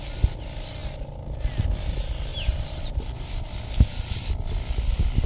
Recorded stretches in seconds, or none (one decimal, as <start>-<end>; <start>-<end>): 0.0-2.3; 3.5-5.3

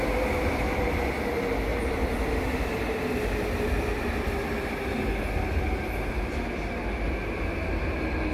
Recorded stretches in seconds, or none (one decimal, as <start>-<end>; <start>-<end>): 0.0-8.3

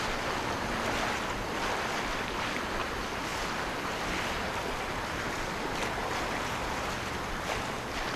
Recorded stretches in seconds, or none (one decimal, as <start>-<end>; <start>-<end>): 0.0-3.3; 5.6-8.2

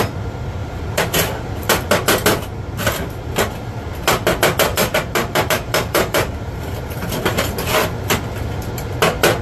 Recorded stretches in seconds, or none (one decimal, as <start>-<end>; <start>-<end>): 0.0-0.6; 1.4-4.7; 7.5-9.4

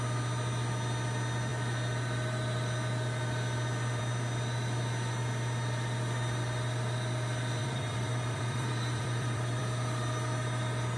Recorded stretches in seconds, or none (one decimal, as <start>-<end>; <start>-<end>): 0.0-7.6; 9.6-11.0